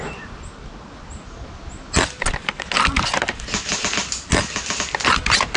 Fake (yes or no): no